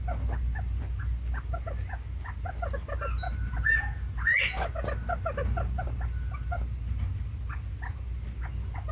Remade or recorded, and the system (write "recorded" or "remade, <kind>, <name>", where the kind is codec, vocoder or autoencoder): recorded